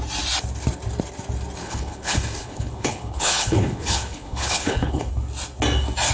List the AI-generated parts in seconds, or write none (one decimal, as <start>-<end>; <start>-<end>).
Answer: 1.6-5.1